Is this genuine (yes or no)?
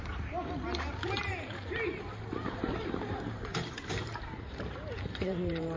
no